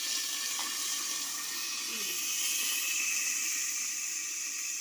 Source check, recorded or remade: recorded